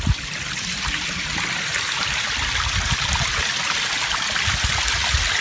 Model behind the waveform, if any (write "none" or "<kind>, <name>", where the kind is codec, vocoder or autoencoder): none